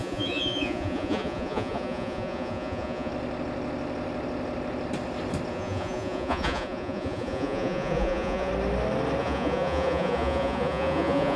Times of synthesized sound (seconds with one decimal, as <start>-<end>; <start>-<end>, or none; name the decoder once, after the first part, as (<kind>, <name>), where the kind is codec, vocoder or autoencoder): 0.0-3.1 (vocoder, Vocos); 5.5-8.5; 9.2-11.4